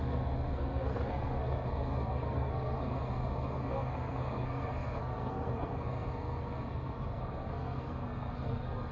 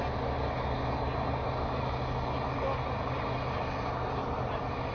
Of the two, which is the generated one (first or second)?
first